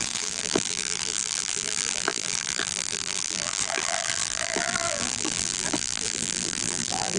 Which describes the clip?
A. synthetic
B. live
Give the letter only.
A